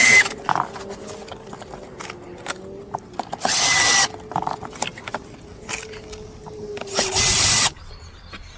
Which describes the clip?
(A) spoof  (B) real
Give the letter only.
B